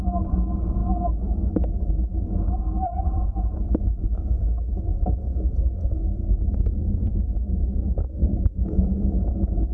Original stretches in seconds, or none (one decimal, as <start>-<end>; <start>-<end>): 0.0-4.0; 4.7-5.3; 9.2-9.7